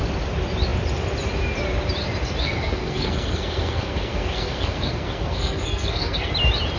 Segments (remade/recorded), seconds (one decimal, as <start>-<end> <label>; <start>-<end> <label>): 0.0-2.4 recorded; 2.4-6.3 remade; 6.3-6.8 recorded